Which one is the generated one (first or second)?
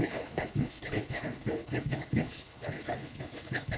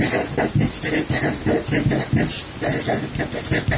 first